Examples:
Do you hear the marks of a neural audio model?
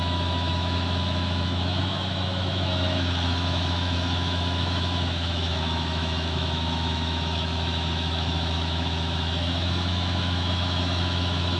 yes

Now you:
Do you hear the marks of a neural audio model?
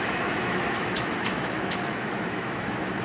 yes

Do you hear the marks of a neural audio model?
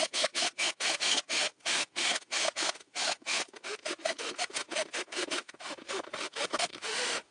yes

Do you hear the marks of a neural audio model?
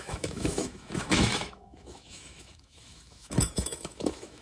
yes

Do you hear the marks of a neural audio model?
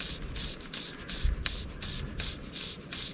no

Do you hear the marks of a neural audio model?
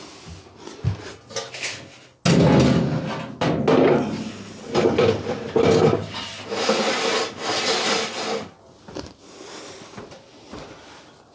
no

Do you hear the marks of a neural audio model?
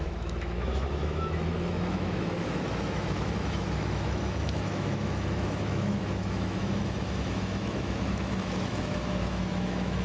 yes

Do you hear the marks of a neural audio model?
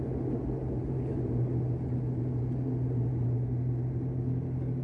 no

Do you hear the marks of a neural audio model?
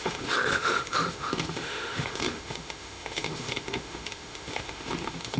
yes